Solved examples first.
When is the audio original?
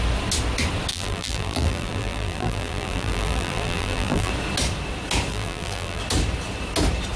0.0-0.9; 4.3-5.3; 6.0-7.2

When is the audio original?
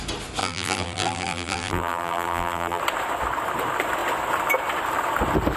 0.0-0.4; 2.8-5.6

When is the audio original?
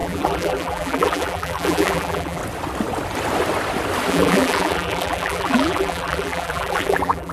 2.4-4.1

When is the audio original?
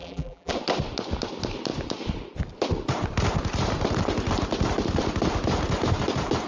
0.5-6.5